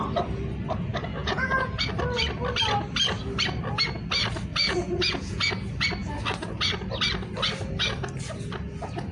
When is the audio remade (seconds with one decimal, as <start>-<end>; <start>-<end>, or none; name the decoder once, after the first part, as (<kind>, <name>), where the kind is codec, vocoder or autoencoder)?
1.2-1.9 (vocoder, Vocos); 4.5-5.5